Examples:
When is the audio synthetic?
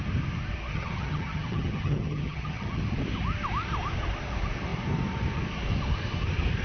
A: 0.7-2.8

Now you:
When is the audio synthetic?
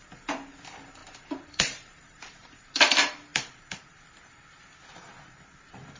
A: 1.0-2.7; 3.3-4.4